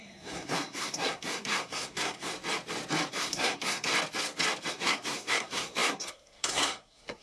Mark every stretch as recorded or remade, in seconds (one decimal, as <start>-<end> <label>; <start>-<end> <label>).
0.0-2.3 remade; 2.3-3.1 recorded; 3.1-3.9 remade; 3.9-4.7 recorded; 4.7-7.2 remade